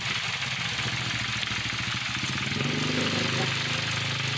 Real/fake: real